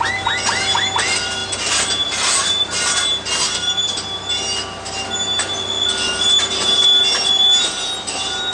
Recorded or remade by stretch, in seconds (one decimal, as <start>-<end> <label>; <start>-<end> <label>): 0.0-8.5 recorded